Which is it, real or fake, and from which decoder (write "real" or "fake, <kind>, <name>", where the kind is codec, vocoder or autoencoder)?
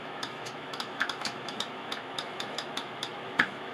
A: fake, autoencoder, DAC-VAE